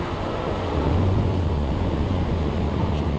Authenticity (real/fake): fake